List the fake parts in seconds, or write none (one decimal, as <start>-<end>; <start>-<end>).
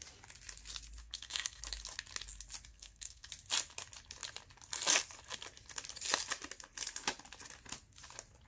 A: 1.0-1.6; 2.7-3.3